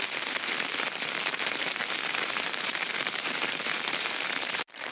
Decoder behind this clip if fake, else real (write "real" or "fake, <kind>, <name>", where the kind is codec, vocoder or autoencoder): fake, vocoder, BigVGAN v2